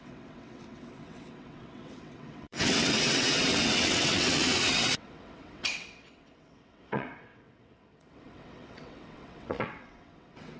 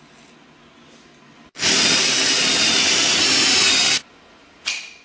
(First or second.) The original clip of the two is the second